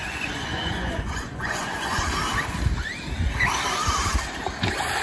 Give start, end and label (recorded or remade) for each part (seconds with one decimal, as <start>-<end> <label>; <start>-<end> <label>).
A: 0.0-2.0 remade; 2.0-5.0 recorded